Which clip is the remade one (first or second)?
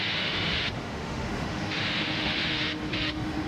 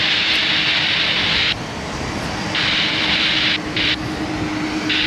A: first